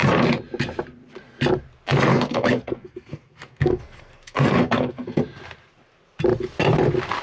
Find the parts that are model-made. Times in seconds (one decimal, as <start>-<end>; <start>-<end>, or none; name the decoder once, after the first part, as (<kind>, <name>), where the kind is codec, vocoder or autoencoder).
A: 2.1-5.2 (codec, SNAC)